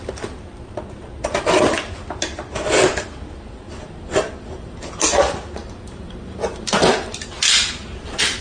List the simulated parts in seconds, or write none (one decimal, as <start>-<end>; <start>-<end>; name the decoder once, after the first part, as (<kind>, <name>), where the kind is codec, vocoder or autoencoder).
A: 5.6-6.9 (vocoder, BigVGAN v2)